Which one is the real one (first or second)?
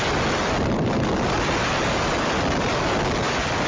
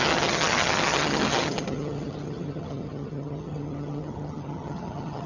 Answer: first